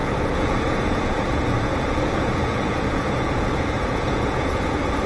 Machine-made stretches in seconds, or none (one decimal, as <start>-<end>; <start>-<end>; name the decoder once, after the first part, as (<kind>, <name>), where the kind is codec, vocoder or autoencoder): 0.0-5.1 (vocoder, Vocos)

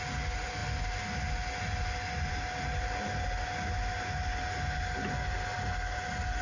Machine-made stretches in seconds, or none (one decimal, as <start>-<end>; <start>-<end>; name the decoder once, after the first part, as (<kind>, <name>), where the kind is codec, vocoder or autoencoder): none

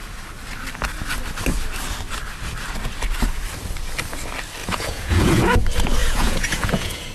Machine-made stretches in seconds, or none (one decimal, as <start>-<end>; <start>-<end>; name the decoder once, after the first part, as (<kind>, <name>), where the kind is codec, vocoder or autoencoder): 4.6-5.6 (vocoder, Vocos); 6.0-7.1

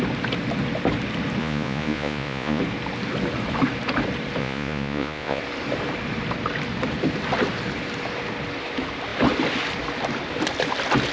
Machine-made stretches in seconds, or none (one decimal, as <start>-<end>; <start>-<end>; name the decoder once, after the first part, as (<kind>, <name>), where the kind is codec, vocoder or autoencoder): 1.4-2.6 (vocoder, Vocos); 4.4-5.4

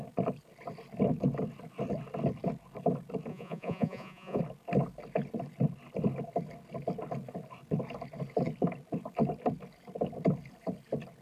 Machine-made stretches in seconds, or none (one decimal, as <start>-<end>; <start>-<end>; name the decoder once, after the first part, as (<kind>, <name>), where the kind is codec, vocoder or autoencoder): 3.3-4.4 (vocoder, Vocos)

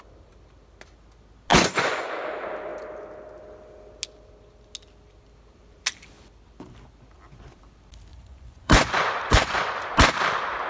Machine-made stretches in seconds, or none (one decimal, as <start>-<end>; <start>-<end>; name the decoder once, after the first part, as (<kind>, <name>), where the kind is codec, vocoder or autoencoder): 1.5-2.0 (vocoder, Vocos); 8.1-9.8

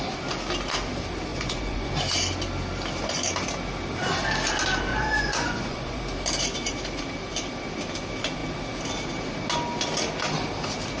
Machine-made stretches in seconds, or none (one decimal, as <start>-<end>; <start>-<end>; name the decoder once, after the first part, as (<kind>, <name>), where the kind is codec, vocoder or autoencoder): 1.3-1.9 (vocoder, Vocos); 4.9-6.0